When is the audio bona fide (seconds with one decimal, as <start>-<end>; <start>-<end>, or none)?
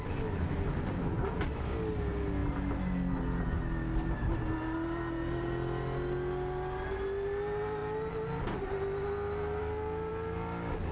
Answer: 0.0-10.9